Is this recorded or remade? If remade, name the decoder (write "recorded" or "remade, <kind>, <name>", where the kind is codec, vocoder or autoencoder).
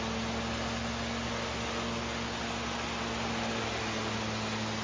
recorded